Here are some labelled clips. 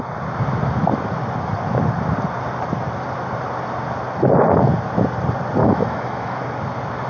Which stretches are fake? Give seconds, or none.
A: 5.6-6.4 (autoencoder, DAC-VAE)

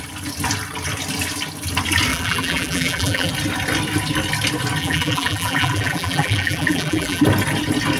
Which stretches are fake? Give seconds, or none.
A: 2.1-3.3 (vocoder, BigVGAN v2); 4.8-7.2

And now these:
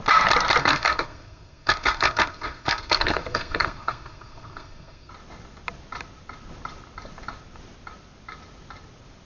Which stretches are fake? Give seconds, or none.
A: 0.6-5.1 (codec, SNAC)

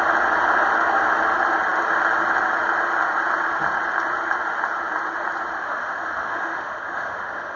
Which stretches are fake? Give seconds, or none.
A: 5.6-7.6 (autoencoder, DAC-VAE)